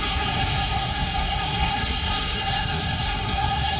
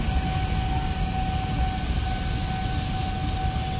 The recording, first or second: second